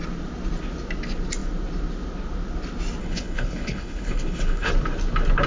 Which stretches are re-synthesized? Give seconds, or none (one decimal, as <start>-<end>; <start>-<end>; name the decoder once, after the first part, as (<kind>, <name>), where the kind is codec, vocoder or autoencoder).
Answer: 3.0-4.7 (codec, HILCodec)